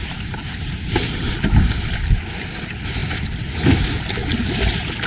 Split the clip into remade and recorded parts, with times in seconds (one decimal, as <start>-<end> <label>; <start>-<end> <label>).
0.0-1.3 remade; 1.3-5.1 recorded